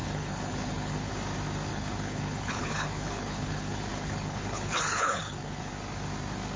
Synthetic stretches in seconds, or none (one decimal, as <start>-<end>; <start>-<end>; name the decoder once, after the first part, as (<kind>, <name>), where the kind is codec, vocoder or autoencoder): 0.0-1.1 (codec, HILCodec); 1.7-5.7